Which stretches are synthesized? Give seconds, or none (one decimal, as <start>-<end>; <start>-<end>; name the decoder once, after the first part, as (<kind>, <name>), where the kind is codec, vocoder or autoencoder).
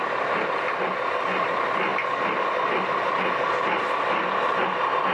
none